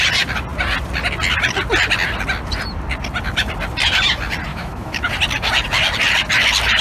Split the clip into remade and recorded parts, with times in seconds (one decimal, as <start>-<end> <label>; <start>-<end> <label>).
0.0-4.5 recorded; 4.5-5.1 remade; 5.1-6.8 recorded